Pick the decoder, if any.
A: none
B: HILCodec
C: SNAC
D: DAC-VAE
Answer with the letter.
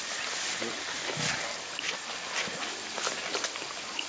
A